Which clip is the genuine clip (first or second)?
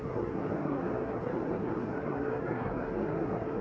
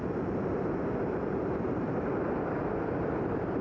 second